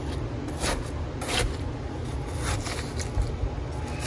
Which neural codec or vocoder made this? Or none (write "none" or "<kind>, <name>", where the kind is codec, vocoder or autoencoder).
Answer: none